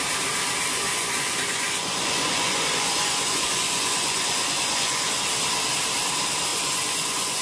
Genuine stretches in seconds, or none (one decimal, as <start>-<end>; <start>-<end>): 0.0-0.7; 5.1-6.5

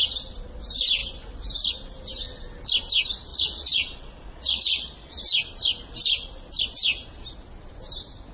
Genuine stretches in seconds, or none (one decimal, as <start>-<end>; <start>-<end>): 0.0-3.3; 5.2-8.3

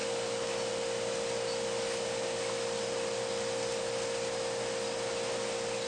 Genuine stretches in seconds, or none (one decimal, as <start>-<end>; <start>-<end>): 0.0-5.9

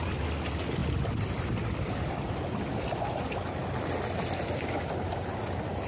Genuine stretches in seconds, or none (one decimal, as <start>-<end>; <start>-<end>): 0.0-5.9

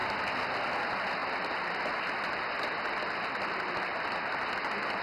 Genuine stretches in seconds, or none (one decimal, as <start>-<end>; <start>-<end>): 0.0-5.0